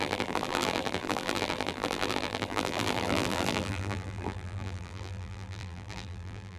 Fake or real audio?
fake